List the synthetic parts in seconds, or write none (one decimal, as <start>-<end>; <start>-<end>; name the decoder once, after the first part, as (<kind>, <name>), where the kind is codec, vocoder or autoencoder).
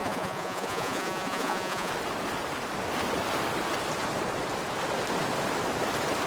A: 0.0-1.9 (vocoder, Vocos)